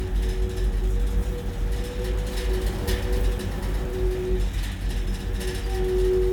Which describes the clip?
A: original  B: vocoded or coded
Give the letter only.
A